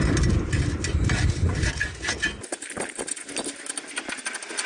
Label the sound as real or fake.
real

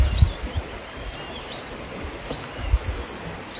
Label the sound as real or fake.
real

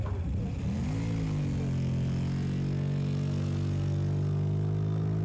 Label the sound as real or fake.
real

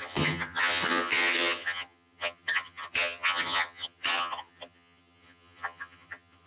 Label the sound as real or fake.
fake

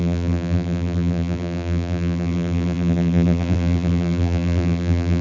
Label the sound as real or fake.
fake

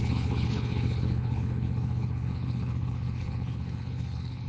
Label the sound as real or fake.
fake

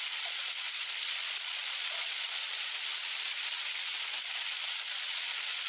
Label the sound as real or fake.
fake